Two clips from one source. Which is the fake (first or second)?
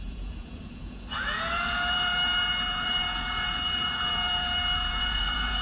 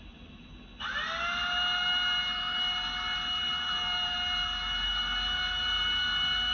first